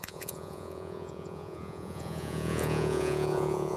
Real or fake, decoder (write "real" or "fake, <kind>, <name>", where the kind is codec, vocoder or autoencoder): fake, vocoder, Vocos